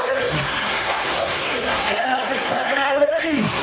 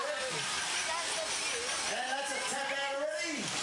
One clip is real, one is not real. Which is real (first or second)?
second